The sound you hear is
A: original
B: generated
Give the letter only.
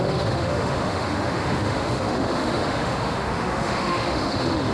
B